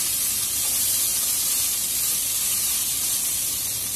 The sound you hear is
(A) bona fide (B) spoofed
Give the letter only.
A